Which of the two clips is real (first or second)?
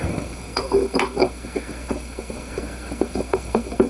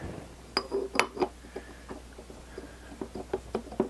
second